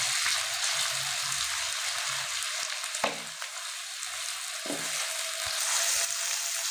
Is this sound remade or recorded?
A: recorded